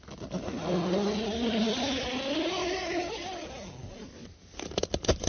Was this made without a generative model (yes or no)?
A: yes